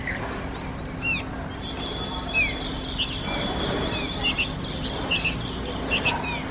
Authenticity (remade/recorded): recorded